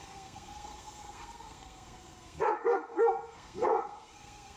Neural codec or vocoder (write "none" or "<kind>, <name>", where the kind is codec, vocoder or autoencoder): codec, SNAC